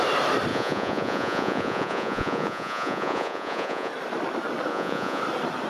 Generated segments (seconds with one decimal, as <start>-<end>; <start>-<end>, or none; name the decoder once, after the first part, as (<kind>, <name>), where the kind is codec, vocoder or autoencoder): 0.5-3.9 (vocoder, Vocos); 4.7-5.2